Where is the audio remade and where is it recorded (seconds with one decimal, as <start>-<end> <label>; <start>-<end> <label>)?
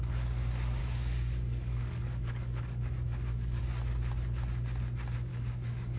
0.0-0.8 recorded; 0.8-3.6 remade; 3.6-5.3 recorded; 5.3-6.0 remade